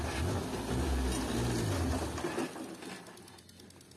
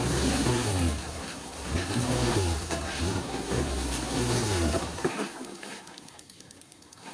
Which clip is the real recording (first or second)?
first